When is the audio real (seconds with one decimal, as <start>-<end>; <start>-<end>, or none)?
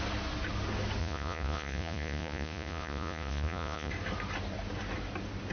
0.0-1.0; 3.9-5.5